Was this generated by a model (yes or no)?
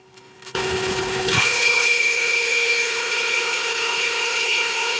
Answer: yes